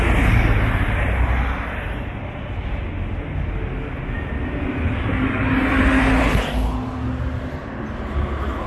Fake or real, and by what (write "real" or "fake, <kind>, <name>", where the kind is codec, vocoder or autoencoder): real